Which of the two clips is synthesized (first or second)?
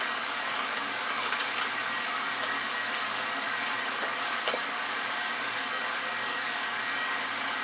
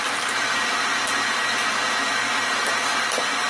first